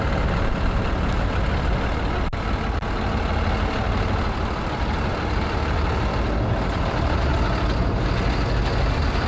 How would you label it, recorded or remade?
recorded